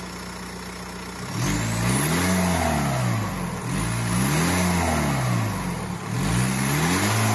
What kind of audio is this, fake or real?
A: real